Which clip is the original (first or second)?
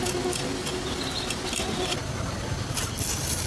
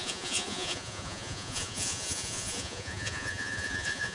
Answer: first